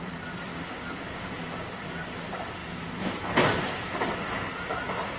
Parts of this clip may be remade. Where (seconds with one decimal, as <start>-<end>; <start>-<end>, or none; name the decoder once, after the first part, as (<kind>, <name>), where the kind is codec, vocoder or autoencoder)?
0.5-1.8 (codec, DAC)